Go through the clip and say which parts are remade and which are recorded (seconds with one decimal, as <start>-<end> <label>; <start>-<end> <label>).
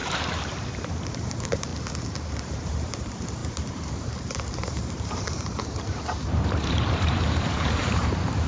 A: 0.0-1.7 remade; 1.7-2.3 recorded; 2.3-8.5 remade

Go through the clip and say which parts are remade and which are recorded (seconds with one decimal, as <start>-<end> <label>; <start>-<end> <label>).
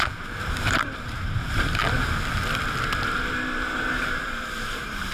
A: 0.0-1.8 remade; 1.8-3.9 recorded; 3.9-5.1 remade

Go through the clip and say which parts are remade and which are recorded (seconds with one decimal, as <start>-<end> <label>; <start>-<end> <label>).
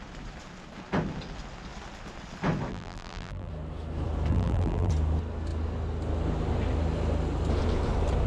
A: 0.0-2.7 recorded; 2.7-3.5 remade; 3.5-4.3 recorded; 4.3-4.9 remade; 4.9-8.3 recorded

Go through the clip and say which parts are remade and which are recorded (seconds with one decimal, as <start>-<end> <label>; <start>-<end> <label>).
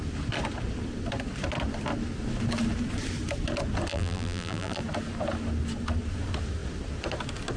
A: 0.0-3.9 recorded; 3.9-4.8 remade; 4.8-7.6 recorded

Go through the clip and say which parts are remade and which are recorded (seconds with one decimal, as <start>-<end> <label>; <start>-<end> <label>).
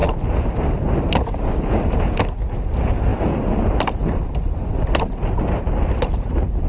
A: 0.0-6.7 recorded